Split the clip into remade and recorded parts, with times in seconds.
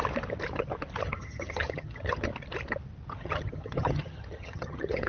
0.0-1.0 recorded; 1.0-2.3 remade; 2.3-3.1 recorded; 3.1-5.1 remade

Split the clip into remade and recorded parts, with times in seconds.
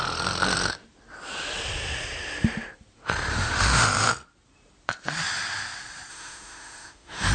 0.0-3.3 recorded; 3.3-4.1 remade; 4.1-6.1 recorded; 6.1-7.3 remade